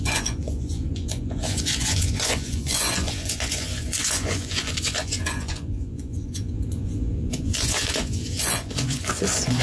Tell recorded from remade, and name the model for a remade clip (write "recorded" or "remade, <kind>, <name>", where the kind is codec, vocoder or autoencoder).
remade, vocoder, Vocos